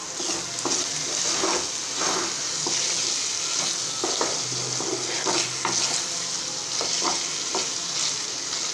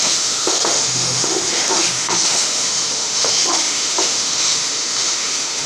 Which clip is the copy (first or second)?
second